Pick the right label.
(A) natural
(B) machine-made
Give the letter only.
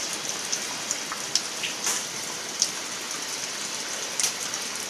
A